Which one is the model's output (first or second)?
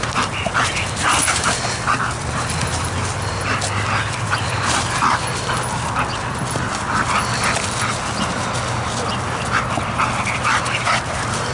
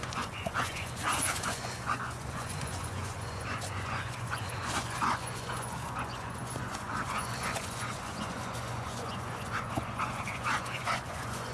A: second